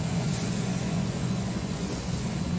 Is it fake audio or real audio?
fake